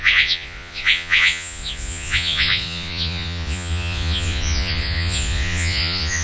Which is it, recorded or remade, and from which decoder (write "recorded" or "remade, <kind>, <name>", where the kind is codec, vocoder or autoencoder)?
remade, vocoder, Vocos